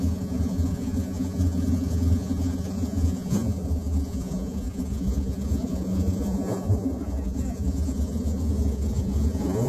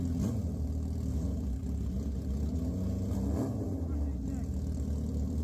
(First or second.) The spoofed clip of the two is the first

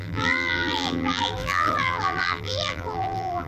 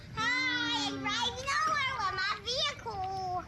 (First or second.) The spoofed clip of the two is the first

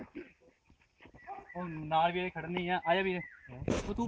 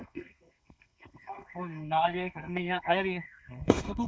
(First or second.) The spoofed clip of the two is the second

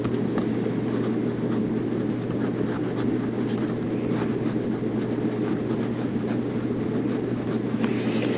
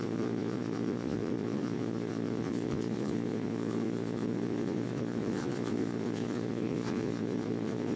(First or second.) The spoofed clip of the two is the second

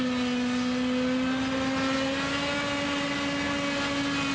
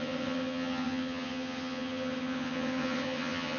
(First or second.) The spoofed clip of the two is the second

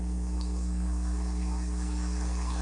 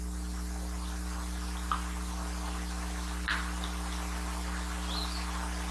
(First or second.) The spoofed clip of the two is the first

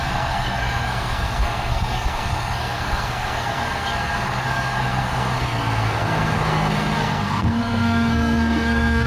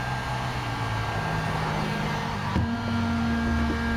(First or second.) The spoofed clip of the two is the first